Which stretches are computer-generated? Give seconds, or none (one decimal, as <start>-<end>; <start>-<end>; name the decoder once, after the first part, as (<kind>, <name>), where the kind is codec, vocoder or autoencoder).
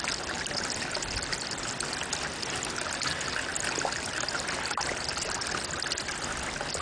none